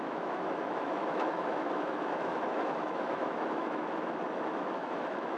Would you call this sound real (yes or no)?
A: no